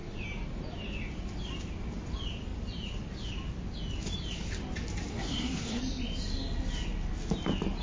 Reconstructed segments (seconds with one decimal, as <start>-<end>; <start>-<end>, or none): 5.1-5.8